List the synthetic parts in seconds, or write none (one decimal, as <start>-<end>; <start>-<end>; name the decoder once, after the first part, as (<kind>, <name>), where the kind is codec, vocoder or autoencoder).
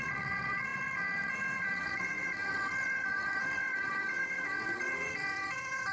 0.0-5.9 (vocoder, WaveNeXt)